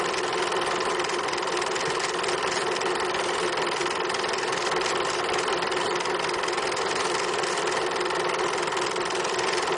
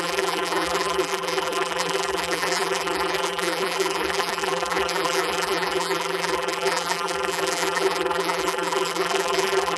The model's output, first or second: second